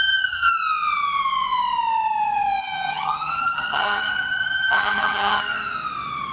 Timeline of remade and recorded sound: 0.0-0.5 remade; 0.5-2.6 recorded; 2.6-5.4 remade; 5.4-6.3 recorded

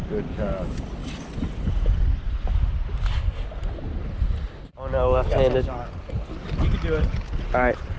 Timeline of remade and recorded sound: 0.0-8.0 recorded

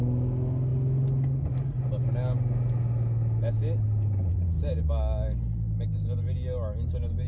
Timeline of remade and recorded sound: 0.0-7.3 recorded